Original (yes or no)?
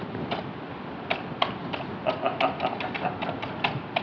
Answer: yes